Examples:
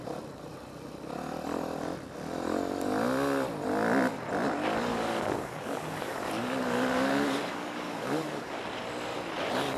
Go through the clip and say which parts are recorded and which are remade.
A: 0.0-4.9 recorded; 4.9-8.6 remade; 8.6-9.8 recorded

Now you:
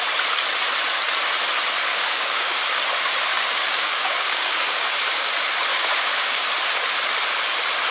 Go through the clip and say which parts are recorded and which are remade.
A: 0.0-1.9 recorded; 1.9-2.8 remade; 2.8-3.3 recorded; 3.3-5.3 remade; 5.3-5.7 recorded; 5.7-6.5 remade; 6.5-7.9 recorded